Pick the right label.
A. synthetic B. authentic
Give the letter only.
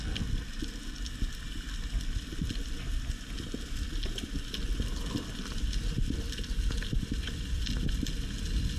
B